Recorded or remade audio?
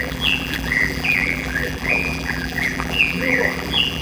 remade